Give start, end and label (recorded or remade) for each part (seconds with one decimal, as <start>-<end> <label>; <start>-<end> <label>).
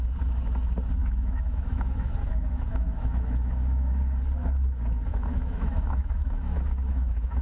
0.0-1.0 recorded; 1.0-3.9 remade; 3.9-5.1 recorded; 5.1-7.4 remade